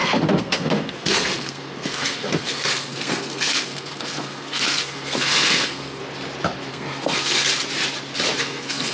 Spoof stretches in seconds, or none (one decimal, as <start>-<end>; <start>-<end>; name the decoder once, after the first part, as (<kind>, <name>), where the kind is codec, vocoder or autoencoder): 0.0-6.0 (codec, SNAC); 6.7-7.5; 8.4-8.9

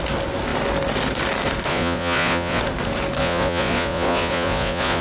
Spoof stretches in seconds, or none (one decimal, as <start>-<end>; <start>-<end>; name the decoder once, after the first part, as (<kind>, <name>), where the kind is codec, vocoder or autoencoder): 1.7-2.6 (vocoder, Vocos); 3.2-5.0

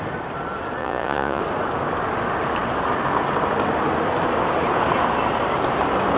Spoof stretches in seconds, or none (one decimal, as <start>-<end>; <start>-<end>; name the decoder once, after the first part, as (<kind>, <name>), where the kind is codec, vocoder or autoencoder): 0.8-1.4 (vocoder, Vocos)

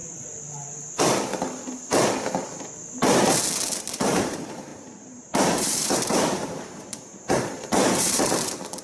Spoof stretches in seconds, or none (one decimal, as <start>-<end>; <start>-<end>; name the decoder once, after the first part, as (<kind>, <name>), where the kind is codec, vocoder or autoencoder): 3.8-8.8 (vocoder, BigVGAN v2)

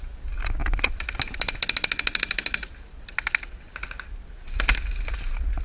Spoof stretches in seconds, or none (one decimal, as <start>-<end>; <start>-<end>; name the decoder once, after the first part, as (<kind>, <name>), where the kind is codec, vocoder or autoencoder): none

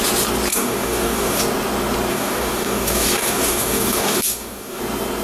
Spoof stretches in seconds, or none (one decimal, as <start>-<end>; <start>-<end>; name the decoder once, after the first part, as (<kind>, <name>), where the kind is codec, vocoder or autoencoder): 0.5-1.4 (codec, DAC); 2.1-4.8

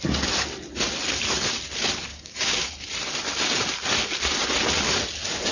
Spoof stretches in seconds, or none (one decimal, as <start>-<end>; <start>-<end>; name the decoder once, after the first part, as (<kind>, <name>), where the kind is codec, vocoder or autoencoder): 2.1-2.7 (codec, DAC)

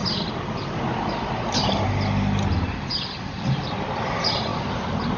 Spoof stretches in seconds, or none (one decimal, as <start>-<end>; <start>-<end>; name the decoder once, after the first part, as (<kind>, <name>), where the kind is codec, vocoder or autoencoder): none